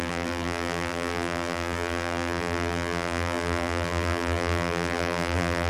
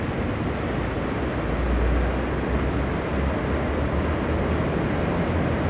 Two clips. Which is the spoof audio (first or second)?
first